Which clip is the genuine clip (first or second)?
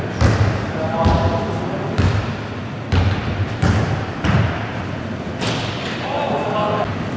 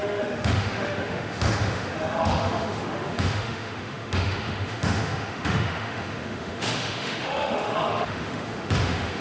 first